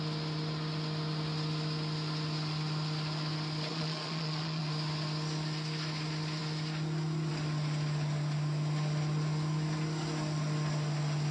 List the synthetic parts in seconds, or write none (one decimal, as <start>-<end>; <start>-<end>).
3.7-4.6